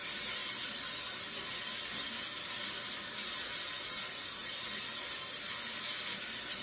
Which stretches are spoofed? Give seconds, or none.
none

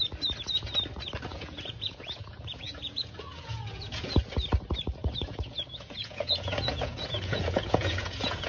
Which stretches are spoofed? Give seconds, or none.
1.3-4.2; 5.0-8.5